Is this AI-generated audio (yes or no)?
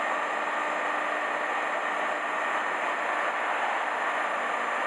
no